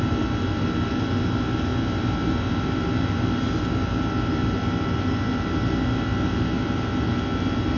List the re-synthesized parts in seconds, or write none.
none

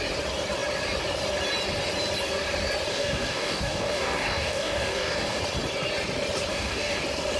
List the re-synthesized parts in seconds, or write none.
2.9-5.4 (codec, DAC); 6.5-7.0

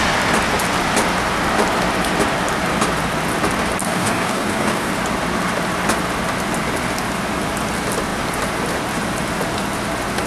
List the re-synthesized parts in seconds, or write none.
3.8-4.9 (codec, DAC)

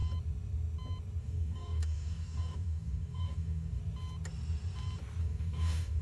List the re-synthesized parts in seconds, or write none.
1.2-3.8 (codec, DAC); 5.2-6.0

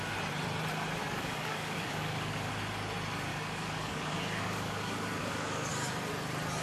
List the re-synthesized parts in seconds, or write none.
1.0-2.5 (codec, DAC); 3.3-5.7

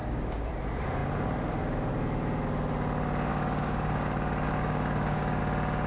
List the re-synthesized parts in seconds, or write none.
0.0-0.5 (codec, DAC); 3.3-5.4